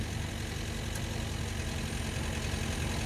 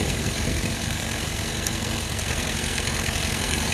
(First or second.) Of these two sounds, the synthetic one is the second